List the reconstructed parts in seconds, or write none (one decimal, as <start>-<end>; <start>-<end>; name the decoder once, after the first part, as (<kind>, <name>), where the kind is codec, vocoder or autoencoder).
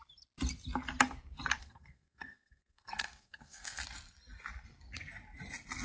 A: 1.6-3.8 (codec, SNAC)